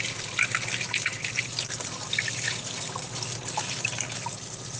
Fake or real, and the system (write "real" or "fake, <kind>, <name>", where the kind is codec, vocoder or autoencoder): fake, vocoder, BigVGAN v2